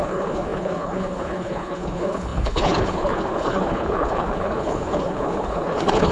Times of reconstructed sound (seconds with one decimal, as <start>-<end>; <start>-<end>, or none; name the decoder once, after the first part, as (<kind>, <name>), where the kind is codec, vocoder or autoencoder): 0.0-6.1 (codec, HILCodec)